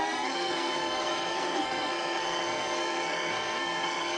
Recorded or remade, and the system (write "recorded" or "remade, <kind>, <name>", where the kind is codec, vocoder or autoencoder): remade, codec, SNAC